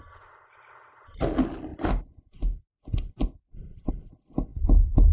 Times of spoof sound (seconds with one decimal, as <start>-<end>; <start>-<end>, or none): none